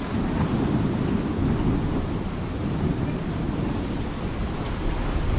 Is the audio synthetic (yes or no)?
no